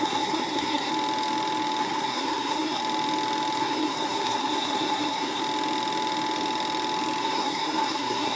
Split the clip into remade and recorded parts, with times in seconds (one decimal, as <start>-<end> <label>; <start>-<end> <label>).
0.0-0.9 remade; 0.9-1.8 recorded; 1.8-2.8 remade; 2.8-3.6 recorded; 3.6-5.4 remade; 5.4-7.2 recorded; 7.2-8.4 remade